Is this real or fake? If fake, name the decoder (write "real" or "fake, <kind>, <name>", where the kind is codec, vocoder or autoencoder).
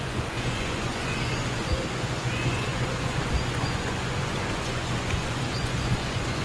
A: fake, vocoder, Vocos